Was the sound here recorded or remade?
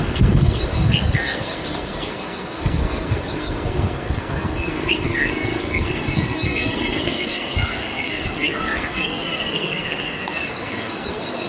remade